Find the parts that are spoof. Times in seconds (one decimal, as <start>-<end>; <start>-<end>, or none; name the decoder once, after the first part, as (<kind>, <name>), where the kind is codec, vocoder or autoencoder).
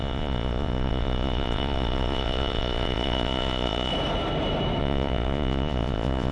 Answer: 0.0-3.9 (vocoder, Vocos); 4.8-6.3